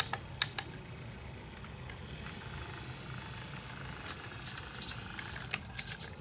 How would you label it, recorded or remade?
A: recorded